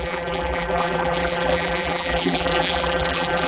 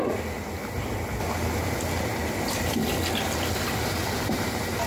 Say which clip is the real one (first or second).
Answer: second